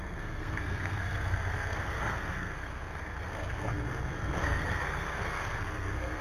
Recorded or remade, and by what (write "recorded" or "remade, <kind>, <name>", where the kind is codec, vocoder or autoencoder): remade, codec, SNAC